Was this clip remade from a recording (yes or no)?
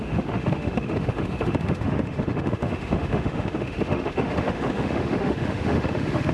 yes